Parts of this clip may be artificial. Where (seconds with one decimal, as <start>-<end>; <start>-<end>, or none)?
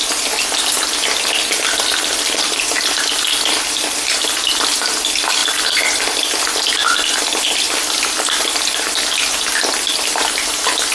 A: none